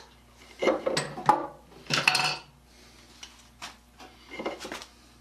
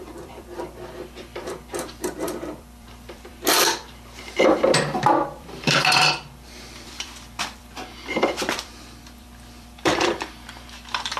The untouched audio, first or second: first